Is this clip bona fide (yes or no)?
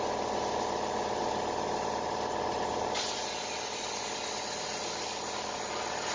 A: yes